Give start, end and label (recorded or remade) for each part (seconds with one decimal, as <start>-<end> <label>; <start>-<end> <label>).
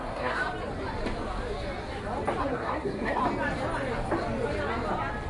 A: 0.0-0.4 remade; 0.4-2.4 recorded; 2.4-3.2 remade; 3.2-5.3 recorded